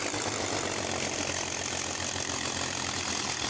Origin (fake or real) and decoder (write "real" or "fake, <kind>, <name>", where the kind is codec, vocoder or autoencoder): fake, vocoder, BigVGAN v2